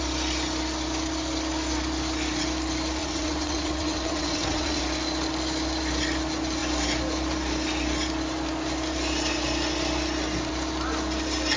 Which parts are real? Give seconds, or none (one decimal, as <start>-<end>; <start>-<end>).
0.0-3.0; 4.8-11.6